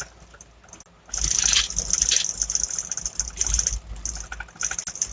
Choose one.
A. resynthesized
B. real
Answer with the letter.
B